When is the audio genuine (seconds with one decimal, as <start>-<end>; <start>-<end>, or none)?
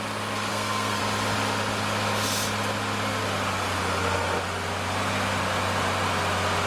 0.0-0.5; 1.0-6.7